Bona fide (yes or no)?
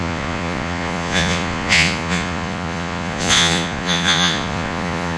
no